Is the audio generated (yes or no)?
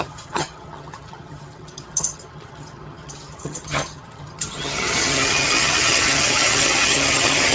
yes